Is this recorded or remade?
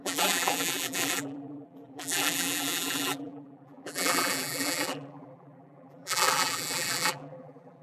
remade